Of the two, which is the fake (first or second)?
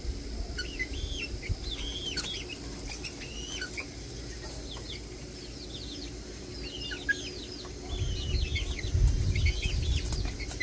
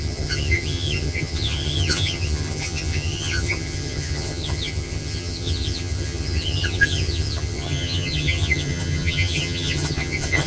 second